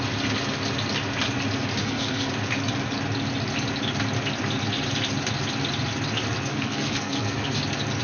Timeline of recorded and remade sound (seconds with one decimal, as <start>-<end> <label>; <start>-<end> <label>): 0.0-1.8 recorded; 1.8-2.3 remade; 2.3-6.5 recorded; 6.5-7.6 remade; 7.6-8.0 recorded